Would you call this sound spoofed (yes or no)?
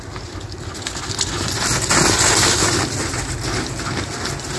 no